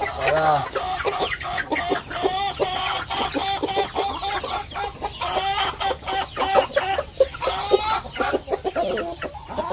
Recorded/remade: recorded